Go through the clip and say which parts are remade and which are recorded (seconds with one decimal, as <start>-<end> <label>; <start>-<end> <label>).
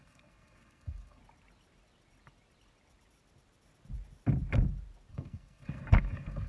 0.0-1.2 remade; 1.2-5.1 recorded; 5.1-6.5 remade